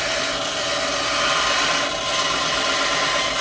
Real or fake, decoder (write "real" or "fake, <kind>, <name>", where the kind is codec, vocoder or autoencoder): real